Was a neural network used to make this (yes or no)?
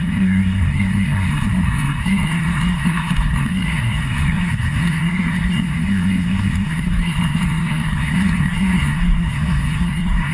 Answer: yes